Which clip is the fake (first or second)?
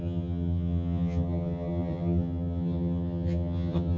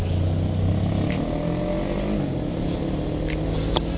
first